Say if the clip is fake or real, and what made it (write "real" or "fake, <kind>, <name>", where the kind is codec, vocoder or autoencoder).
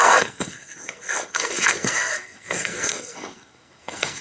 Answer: fake, codec, SNAC